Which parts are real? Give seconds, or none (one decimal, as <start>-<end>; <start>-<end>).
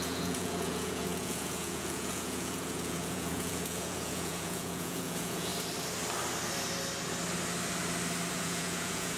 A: 5.5-8.3